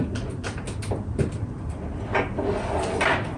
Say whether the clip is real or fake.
real